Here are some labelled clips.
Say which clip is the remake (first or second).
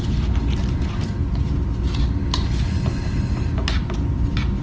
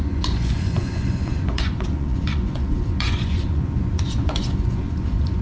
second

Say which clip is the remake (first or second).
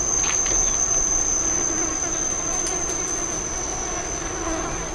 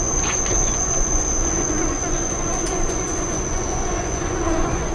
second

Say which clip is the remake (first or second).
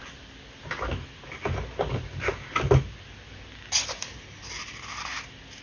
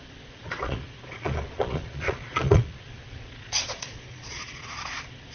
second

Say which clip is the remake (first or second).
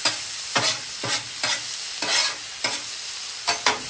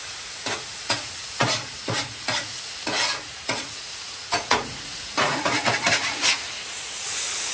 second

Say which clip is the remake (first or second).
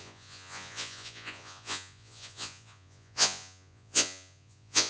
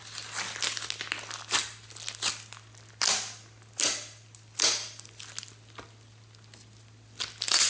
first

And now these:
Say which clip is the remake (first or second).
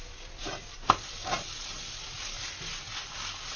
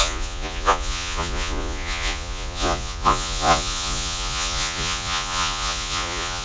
second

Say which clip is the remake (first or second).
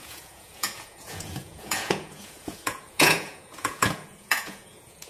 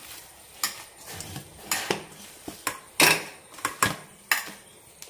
first